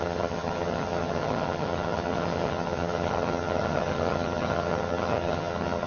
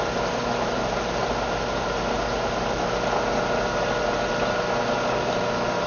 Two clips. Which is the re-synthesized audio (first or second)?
first